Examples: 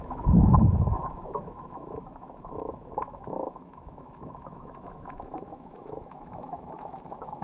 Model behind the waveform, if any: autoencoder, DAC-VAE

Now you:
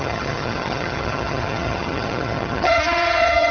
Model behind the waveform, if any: vocoder, HiFi-GAN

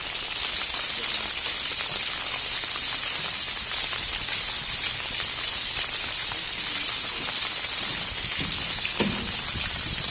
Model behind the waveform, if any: none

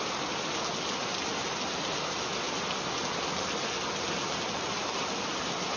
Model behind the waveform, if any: none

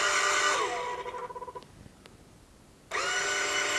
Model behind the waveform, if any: none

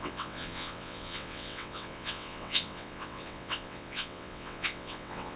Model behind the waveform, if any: vocoder, WaveNeXt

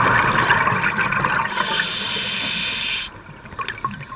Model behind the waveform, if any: none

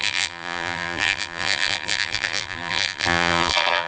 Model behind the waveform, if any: vocoder, BigVGAN v2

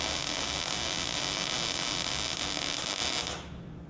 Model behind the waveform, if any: none